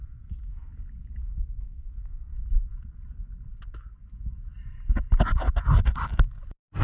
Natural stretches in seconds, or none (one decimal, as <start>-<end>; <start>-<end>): 0.7-1.2; 2.3-6.8